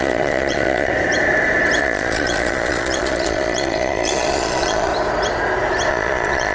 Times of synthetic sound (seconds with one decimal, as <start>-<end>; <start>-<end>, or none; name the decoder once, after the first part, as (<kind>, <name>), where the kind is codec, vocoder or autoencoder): 0.0-0.9 (vocoder, Vocos); 1.8-4.9; 5.9-6.5